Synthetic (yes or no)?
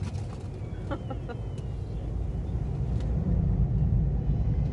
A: no